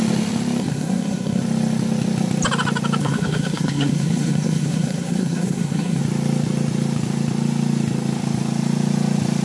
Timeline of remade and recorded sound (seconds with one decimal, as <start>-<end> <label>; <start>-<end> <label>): 0.0-0.6 recorded; 0.6-1.4 remade; 1.4-3.0 recorded; 3.0-6.0 remade; 6.0-9.4 recorded